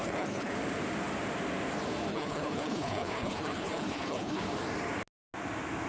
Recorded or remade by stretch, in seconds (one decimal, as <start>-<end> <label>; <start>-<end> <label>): 0.0-0.5 remade; 0.5-2.1 recorded; 2.1-4.4 remade; 4.4-5.9 recorded